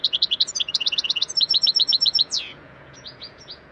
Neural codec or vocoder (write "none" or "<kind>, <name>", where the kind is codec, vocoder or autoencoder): vocoder, Vocos